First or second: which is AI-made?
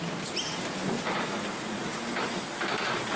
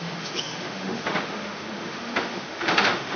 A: second